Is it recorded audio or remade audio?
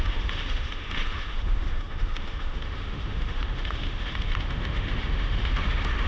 remade